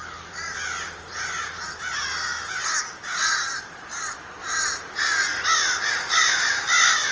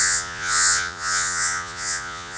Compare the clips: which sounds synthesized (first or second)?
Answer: second